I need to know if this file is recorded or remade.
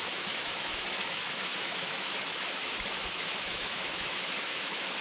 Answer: remade